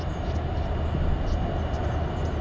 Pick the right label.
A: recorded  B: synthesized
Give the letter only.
A